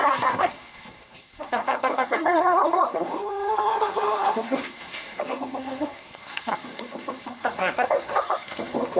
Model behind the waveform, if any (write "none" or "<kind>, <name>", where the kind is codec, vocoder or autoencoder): codec, SNAC